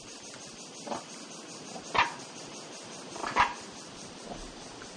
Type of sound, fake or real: real